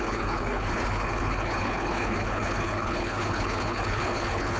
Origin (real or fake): fake